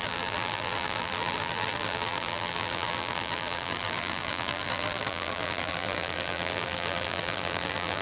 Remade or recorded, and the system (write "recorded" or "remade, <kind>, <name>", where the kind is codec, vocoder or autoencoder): remade, vocoder, BigVGAN v2